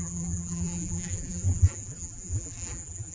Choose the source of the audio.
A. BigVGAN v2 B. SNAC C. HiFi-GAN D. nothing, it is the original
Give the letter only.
A